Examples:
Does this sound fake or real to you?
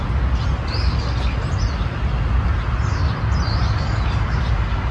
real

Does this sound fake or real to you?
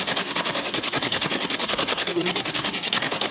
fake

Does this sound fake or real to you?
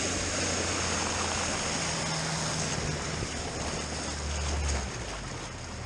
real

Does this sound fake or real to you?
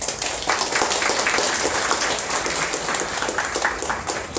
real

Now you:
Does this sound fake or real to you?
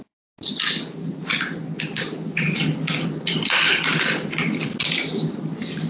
real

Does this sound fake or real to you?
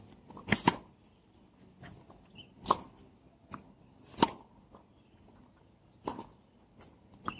real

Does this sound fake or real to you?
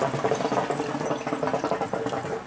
real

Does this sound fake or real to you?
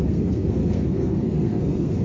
fake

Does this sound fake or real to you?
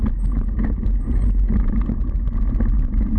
real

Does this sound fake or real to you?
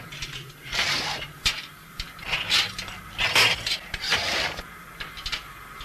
real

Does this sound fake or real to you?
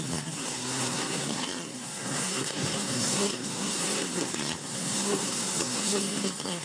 fake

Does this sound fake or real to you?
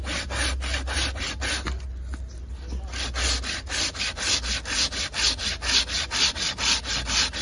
real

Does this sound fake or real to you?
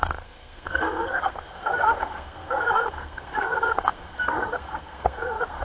fake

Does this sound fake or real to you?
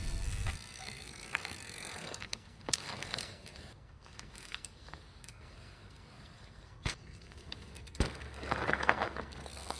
fake